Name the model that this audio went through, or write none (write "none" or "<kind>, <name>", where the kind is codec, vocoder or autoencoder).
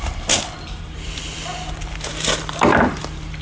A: none